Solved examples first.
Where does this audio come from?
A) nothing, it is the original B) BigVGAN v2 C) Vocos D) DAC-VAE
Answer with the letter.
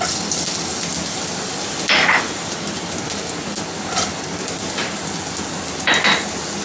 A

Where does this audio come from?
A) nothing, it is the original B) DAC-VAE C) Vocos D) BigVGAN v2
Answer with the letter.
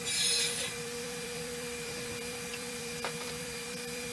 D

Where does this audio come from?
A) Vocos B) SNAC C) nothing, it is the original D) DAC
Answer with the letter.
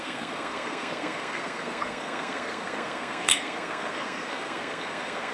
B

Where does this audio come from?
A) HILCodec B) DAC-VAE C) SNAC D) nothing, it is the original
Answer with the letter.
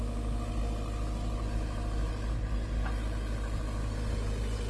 D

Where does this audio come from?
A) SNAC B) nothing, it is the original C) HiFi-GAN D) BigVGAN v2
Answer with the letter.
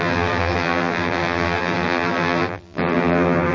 D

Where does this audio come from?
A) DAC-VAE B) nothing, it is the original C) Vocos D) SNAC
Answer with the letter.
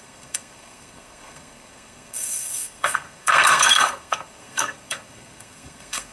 D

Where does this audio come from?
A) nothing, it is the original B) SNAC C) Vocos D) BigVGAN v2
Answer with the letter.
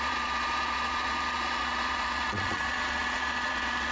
C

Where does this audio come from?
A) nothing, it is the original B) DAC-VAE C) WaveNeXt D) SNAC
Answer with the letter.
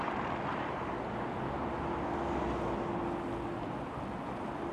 A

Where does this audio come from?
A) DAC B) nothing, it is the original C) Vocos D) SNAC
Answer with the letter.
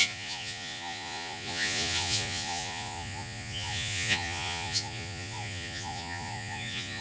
C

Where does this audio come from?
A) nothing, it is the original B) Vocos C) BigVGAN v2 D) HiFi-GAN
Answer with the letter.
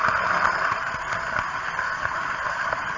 A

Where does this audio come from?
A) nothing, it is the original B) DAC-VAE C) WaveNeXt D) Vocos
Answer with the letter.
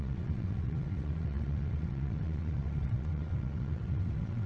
C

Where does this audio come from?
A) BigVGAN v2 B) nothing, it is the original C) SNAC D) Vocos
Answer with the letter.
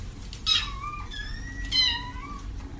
B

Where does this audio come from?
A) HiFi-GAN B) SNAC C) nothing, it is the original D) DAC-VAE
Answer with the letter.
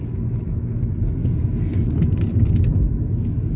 C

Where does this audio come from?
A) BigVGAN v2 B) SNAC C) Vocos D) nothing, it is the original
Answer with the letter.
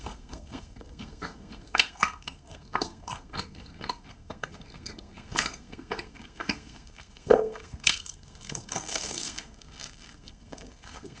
B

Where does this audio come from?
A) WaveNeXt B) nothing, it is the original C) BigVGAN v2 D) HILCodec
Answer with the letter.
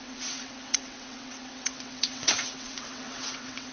A